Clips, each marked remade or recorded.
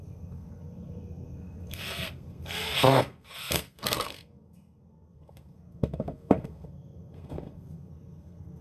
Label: remade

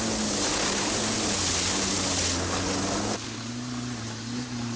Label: recorded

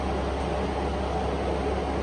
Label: recorded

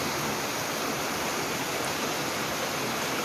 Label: recorded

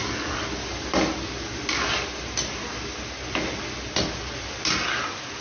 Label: recorded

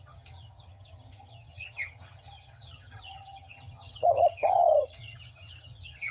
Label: remade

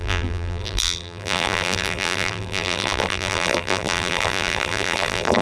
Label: remade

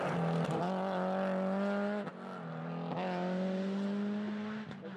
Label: recorded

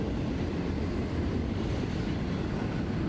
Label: recorded